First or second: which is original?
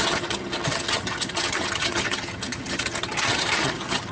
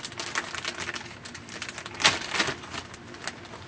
second